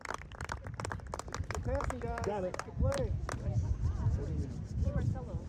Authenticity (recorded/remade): recorded